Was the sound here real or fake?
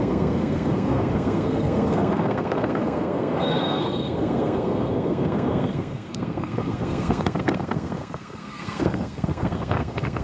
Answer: fake